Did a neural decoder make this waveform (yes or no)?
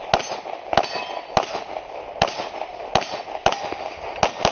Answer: no